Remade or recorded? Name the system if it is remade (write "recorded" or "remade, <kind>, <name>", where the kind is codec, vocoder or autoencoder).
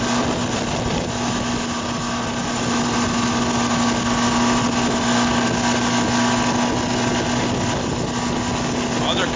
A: recorded